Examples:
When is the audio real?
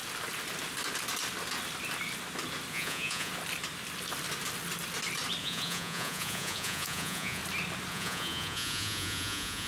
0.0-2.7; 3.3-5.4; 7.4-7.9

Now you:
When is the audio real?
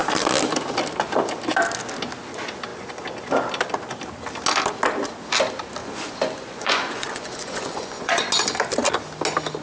0.0-5.8; 8.3-9.6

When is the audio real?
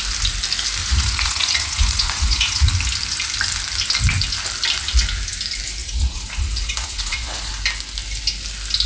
0.0-0.8; 2.7-5.8; 7.5-8.9